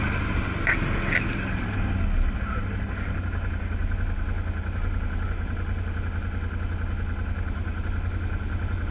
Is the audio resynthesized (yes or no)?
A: no